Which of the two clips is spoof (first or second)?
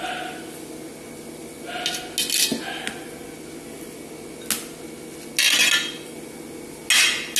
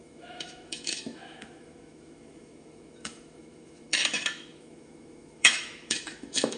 second